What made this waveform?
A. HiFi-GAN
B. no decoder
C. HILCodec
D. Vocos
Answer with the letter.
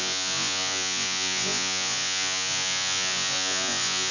D